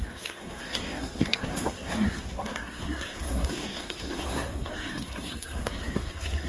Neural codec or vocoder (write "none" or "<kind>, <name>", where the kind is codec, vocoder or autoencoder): codec, SNAC